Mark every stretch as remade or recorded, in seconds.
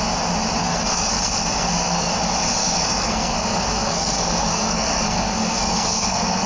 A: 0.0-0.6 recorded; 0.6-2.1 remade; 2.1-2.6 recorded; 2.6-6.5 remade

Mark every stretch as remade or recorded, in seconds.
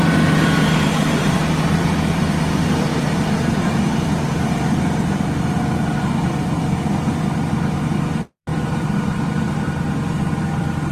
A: 0.0-10.9 remade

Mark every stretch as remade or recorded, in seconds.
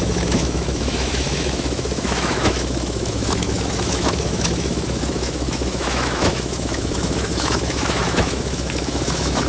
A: 0.0-9.5 remade